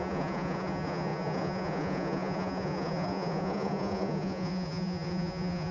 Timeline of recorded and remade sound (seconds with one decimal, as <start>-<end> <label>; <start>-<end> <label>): 0.0-5.7 remade